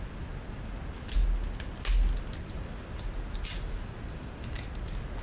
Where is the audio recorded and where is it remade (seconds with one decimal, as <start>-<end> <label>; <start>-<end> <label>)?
0.0-5.2 recorded